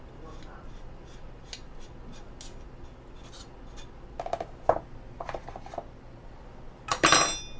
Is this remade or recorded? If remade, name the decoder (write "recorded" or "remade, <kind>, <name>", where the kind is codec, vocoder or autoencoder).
recorded